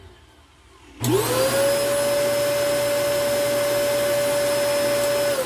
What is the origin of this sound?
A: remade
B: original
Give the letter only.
B